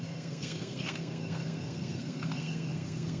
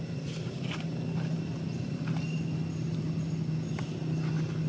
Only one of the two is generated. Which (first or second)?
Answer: first